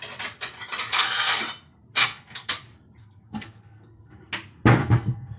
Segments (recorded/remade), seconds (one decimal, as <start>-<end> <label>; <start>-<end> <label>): 0.0-0.9 recorded; 0.9-1.4 remade; 1.4-2.0 recorded; 2.0-2.5 remade; 2.5-3.0 recorded; 3.0-4.3 remade; 4.3-4.8 recorded; 4.8-5.4 remade